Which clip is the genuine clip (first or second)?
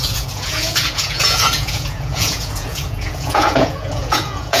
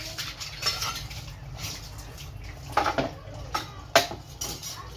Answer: second